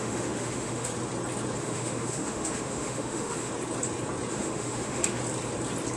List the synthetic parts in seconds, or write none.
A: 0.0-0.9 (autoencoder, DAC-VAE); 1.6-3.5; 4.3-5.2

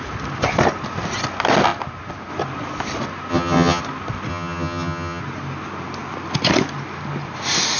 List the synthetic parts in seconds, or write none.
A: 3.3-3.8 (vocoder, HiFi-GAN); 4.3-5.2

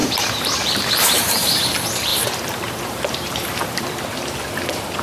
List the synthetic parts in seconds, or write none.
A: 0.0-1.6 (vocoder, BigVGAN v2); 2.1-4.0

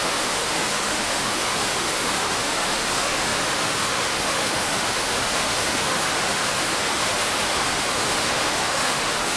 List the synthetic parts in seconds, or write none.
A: 0.0-9.4 (autoencoder, DAC-VAE)